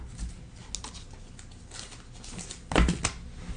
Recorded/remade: recorded